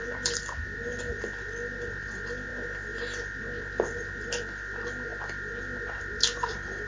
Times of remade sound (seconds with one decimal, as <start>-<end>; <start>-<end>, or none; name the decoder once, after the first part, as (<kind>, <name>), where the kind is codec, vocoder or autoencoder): none